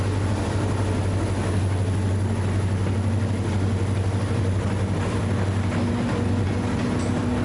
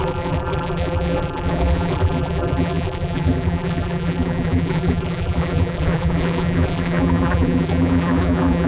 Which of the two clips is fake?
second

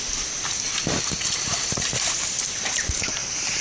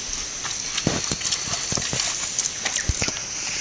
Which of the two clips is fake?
first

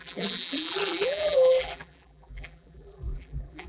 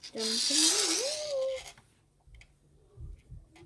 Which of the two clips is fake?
first